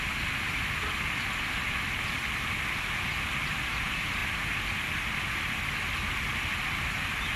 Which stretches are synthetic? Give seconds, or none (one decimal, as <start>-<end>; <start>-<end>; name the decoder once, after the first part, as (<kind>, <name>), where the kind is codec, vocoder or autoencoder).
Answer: none